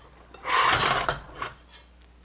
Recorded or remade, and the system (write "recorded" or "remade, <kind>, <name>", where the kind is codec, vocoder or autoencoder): recorded